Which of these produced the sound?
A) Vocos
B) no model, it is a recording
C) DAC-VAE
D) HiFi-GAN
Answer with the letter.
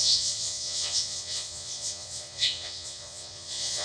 A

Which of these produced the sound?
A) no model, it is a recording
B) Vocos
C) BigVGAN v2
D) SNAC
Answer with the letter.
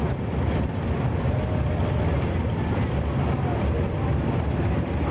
A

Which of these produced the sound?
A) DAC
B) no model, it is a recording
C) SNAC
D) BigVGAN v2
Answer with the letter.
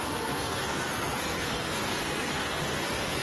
C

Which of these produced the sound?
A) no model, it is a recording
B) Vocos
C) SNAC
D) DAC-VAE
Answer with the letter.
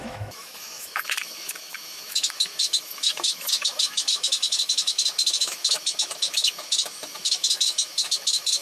D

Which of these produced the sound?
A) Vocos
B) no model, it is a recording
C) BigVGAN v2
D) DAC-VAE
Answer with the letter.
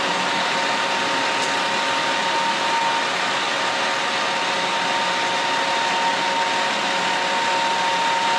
B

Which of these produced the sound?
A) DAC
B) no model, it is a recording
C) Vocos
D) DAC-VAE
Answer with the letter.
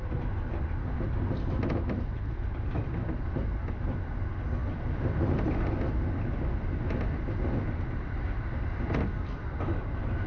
B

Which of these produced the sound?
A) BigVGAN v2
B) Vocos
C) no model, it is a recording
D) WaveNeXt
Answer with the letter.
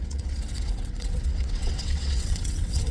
D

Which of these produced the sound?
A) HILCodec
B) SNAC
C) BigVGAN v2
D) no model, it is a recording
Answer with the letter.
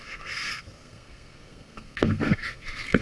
B